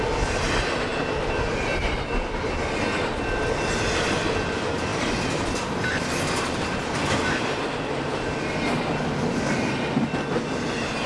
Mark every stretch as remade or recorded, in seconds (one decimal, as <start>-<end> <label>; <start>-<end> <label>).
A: 0.0-11.1 recorded